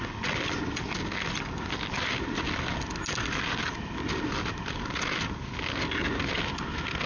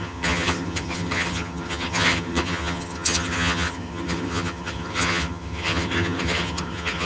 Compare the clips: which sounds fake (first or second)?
second